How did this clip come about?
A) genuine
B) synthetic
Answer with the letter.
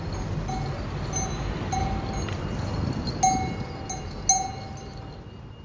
A